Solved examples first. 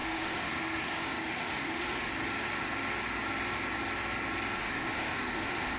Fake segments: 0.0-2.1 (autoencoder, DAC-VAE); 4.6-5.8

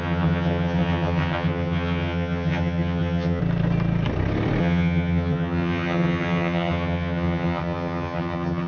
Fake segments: 0.0-3.4 (vocoder, HiFi-GAN); 4.6-8.7

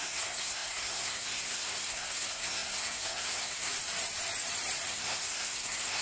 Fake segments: 0.0-3.7 (codec, SNAC); 4.9-6.0